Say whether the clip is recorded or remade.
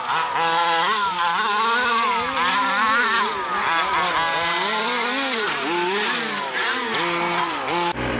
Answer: recorded